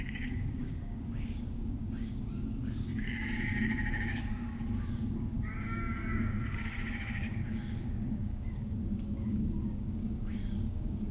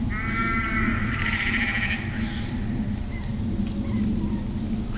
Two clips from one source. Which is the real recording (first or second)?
second